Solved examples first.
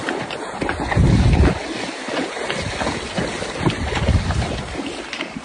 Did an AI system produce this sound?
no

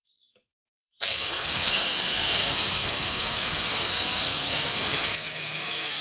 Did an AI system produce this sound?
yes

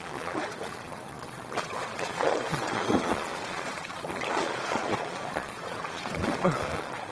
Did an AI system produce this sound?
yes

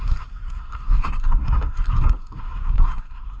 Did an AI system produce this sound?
yes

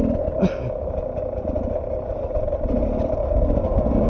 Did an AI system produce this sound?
no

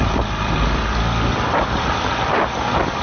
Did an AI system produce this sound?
yes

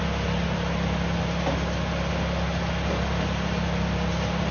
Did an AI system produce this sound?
no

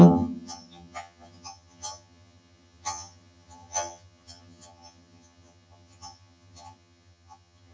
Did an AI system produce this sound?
yes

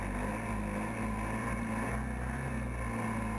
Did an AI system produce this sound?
no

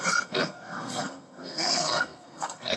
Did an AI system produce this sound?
yes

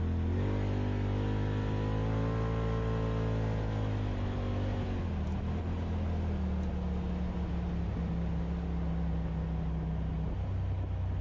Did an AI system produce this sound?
no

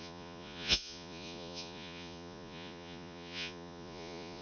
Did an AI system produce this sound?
yes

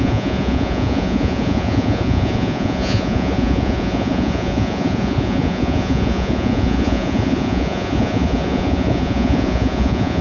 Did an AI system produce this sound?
yes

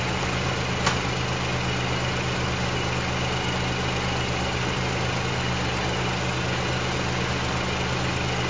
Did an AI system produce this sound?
no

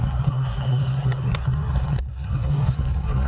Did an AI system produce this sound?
yes